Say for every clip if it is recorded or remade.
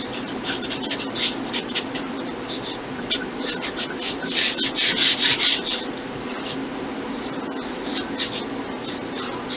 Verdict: recorded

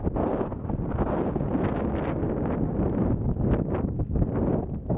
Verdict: recorded